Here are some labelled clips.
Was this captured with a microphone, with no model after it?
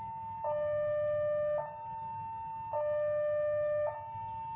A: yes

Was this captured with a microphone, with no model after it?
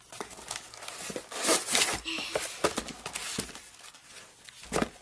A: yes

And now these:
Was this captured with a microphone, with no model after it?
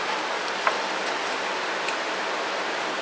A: yes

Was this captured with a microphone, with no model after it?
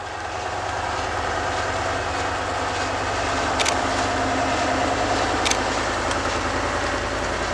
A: yes